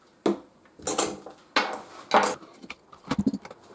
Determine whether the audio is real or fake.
real